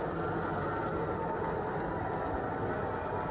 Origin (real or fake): real